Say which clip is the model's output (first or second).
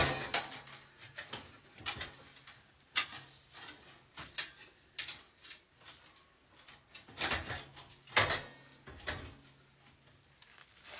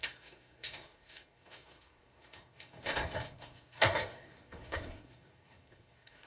second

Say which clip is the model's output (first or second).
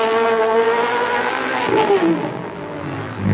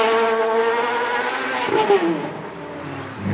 first